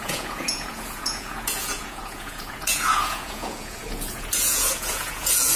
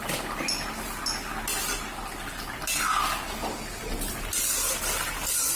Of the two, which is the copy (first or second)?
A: first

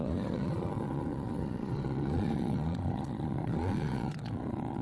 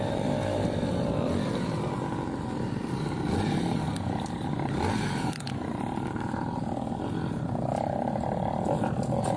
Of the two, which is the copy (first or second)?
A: first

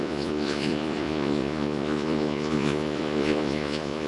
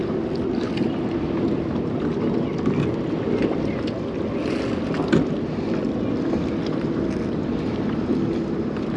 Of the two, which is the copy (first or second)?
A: first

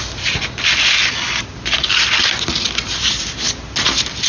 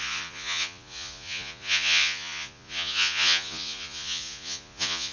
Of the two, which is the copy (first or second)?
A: second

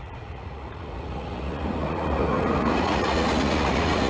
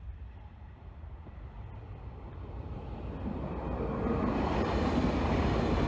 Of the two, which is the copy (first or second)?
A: first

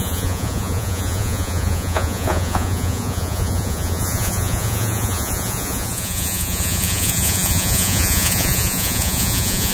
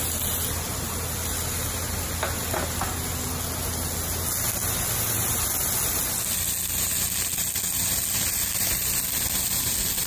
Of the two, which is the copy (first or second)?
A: first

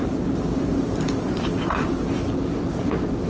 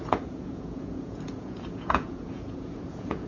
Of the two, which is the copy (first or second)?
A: second